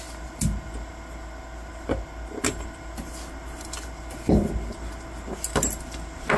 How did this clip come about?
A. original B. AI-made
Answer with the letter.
A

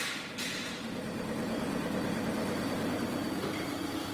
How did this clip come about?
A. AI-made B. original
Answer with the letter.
A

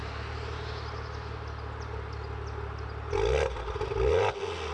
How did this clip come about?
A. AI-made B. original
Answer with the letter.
B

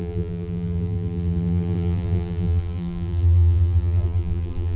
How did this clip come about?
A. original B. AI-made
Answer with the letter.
B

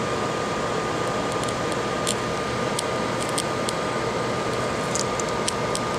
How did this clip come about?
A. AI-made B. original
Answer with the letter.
B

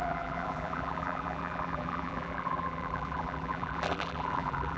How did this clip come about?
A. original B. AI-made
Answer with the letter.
B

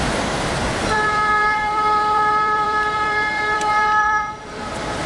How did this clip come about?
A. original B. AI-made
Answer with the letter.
B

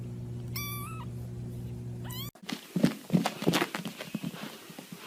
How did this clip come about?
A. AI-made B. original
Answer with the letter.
B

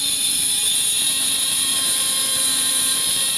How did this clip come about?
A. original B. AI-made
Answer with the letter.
B